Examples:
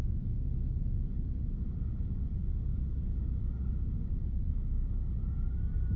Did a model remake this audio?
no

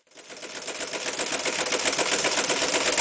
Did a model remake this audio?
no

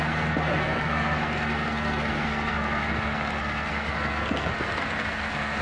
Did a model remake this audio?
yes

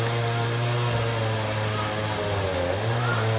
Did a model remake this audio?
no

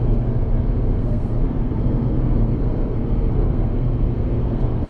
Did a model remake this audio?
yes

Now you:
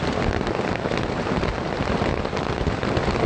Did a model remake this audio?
no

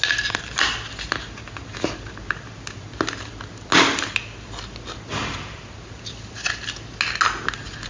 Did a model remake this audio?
no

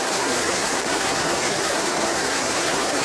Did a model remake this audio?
yes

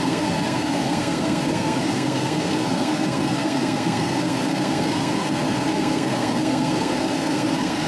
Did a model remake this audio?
yes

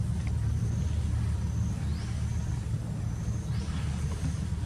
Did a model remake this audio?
no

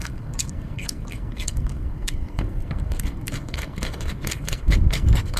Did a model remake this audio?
yes